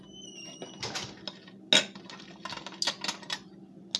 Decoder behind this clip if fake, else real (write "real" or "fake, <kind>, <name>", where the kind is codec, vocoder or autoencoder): real